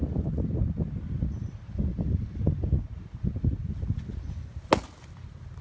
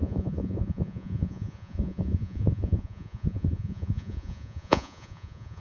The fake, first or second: second